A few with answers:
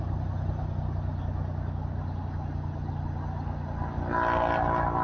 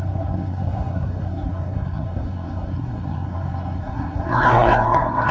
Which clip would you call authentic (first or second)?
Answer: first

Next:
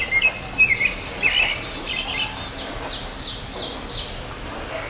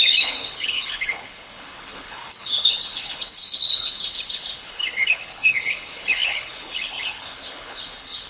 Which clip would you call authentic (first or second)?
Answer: first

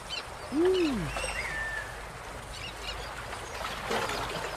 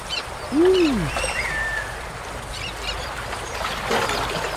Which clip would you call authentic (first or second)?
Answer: first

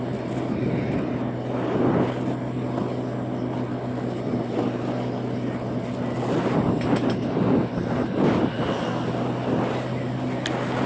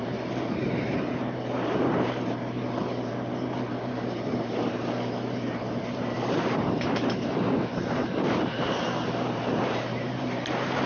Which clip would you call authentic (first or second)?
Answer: first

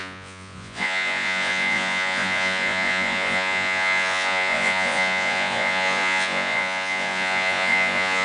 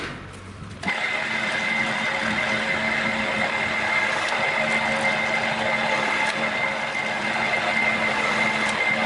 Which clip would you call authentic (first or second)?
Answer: second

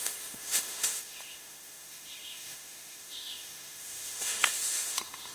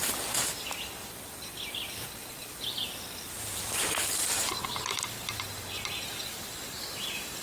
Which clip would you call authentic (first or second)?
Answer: second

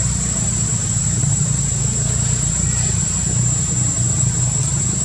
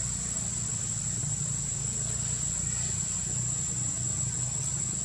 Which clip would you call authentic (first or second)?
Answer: second